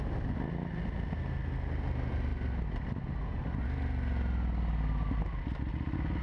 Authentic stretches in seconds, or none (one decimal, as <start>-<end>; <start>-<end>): 0.0-6.2